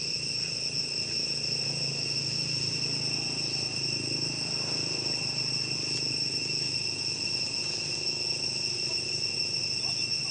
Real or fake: real